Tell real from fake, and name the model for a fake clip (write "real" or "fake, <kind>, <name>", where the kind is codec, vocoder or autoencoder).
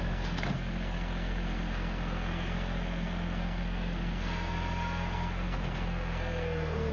fake, codec, SNAC